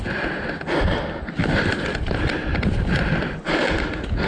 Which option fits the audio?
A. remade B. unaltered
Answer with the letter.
B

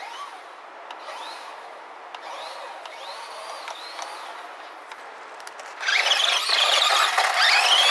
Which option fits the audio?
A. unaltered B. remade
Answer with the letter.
A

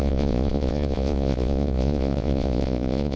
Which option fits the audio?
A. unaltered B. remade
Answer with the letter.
B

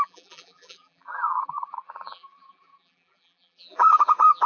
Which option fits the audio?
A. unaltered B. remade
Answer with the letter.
B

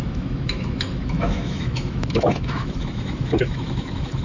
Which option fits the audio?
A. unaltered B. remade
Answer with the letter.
B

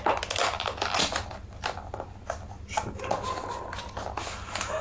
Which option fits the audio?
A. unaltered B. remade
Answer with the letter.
A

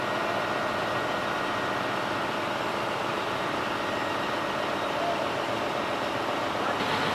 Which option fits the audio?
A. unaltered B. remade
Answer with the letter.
A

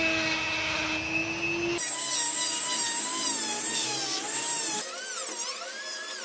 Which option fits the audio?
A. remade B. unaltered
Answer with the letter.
B